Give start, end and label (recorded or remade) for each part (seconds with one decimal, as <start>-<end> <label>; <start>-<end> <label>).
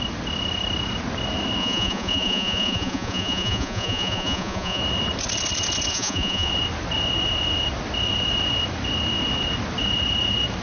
0.0-1.6 recorded; 1.6-4.8 remade; 4.8-5.9 recorded; 5.9-6.5 remade; 6.5-10.6 recorded